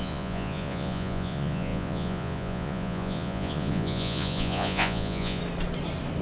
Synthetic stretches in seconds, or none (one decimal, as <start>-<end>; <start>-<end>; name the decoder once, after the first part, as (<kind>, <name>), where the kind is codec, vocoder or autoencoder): 0.0-5.4 (vocoder, Vocos)